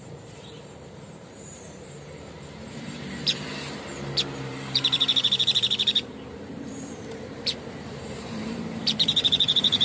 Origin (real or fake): fake